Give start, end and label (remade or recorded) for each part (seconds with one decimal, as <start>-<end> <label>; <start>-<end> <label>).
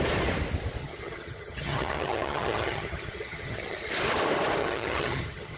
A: 0.0-0.8 recorded; 0.8-3.9 remade; 3.9-4.6 recorded; 4.6-5.6 remade